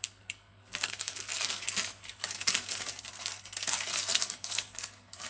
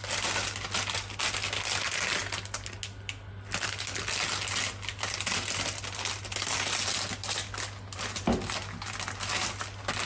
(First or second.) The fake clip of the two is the first